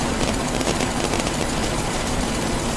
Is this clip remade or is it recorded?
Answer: remade